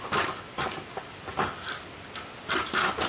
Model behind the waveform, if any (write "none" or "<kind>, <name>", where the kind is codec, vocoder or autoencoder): none